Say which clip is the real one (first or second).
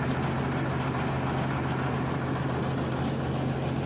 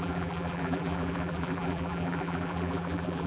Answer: first